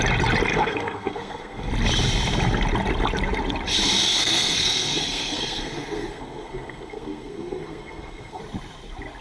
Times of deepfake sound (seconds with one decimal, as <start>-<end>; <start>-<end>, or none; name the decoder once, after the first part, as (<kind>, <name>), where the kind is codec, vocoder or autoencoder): 0.5-1.7 (codec, SNAC); 4.2-8.4